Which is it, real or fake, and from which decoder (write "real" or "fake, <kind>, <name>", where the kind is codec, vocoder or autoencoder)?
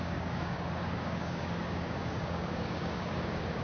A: fake, codec, DAC